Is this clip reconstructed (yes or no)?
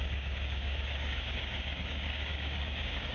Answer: yes